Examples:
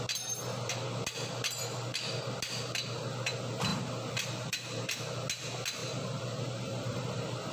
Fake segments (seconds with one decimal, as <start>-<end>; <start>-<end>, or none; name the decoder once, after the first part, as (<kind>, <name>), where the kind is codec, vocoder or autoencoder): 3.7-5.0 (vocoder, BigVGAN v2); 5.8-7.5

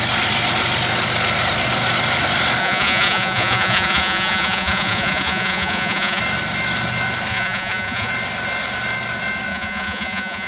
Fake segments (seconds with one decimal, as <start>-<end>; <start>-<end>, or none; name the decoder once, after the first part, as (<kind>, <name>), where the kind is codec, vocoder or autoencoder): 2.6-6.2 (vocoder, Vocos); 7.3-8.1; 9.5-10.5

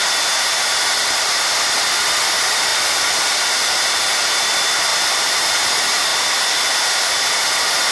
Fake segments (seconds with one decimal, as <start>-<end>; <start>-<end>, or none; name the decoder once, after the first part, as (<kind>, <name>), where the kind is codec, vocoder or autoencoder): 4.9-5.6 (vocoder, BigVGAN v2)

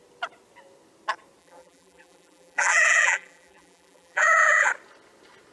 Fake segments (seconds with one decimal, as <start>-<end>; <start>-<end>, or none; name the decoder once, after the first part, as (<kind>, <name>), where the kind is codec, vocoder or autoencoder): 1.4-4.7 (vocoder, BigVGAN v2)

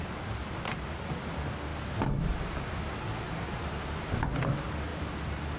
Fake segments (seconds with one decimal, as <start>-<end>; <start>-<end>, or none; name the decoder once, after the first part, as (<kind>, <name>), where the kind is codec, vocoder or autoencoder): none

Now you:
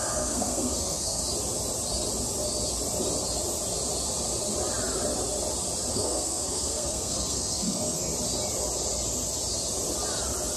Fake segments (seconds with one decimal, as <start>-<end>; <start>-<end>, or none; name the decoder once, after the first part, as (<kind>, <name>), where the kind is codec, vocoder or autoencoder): 0.0-1.2 (codec, SNAC); 5.9-8.1

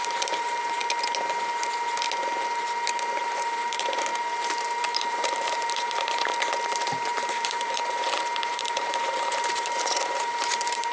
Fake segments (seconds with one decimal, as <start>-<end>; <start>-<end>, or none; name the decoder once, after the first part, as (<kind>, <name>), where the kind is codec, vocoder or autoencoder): 0.0-0.8 (vocoder, BigVGAN v2); 3.2-4.1; 4.8-6.3; 7.1-10.9